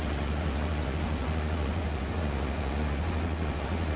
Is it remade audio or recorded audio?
remade